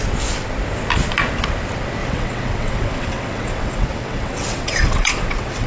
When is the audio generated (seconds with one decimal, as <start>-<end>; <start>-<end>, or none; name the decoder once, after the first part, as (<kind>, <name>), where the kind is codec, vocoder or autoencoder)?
2.0-5.7 (vocoder, WaveNeXt)